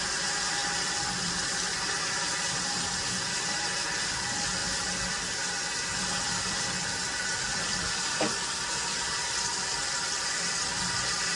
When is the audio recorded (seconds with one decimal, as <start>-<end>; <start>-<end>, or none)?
none